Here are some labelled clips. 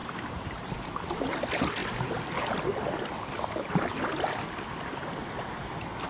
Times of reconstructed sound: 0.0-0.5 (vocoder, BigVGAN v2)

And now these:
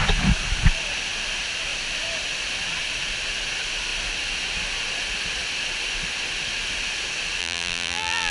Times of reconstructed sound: 7.4-8.3 (vocoder, BigVGAN v2)

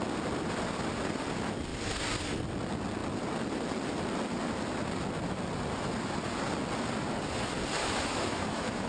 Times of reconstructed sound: 7.8-8.9 (autoencoder, DAC-VAE)

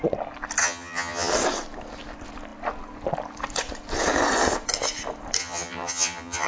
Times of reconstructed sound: 0.6-1.3 (vocoder, HiFi-GAN); 5.4-6.5

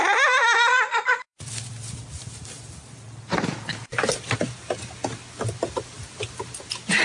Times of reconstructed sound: 0.0-5.0 (vocoder, BigVGAN v2); 5.8-7.0